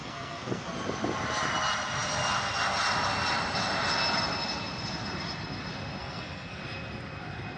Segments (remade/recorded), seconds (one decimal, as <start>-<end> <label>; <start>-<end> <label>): 0.0-0.7 remade; 0.7-6.0 recorded; 6.0-6.6 remade; 6.6-7.6 recorded